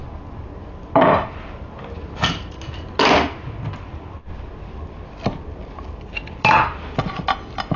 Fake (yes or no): no